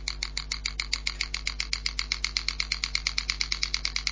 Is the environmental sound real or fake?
real